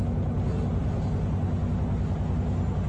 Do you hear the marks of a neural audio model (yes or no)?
no